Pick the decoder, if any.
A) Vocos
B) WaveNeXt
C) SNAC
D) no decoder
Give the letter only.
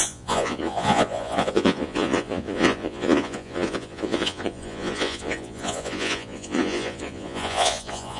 A